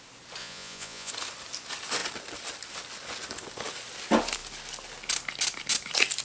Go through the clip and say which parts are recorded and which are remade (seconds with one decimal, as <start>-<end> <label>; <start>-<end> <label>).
0.0-0.4 recorded; 0.4-1.1 remade; 1.1-6.2 recorded